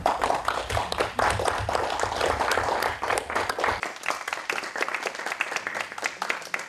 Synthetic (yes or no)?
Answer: no